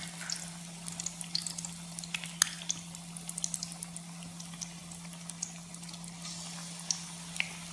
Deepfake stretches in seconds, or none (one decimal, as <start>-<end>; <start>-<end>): none

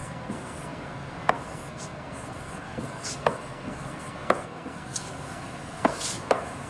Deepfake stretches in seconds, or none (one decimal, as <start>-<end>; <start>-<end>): 0.0-6.7

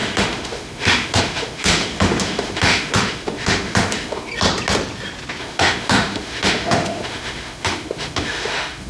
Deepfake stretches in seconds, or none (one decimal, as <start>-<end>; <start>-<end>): 0.0-4.3; 5.4-8.9

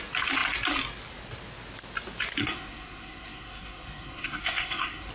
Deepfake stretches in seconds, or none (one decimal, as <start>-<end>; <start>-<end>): 2.4-5.1

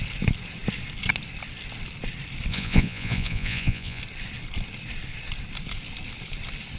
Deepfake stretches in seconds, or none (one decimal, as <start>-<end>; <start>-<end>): 2.5-4.0

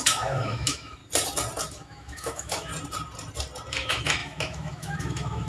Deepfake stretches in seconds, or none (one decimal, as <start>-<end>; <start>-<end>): 0.0-1.0; 1.7-2.7; 3.7-5.5